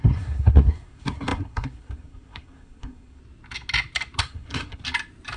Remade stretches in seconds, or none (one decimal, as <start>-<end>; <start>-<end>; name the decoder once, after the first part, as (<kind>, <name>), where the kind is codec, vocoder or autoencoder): 0.0-3.2 (codec, SNAC); 4.2-4.8

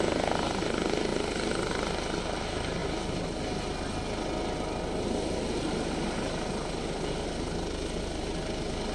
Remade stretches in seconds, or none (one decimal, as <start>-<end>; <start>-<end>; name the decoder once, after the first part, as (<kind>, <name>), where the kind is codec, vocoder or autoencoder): none

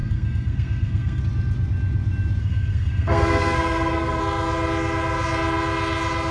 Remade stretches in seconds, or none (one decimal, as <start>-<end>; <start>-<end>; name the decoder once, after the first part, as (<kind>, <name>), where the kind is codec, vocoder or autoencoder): 0.0-1.2 (codec, SNAC); 2.4-4.2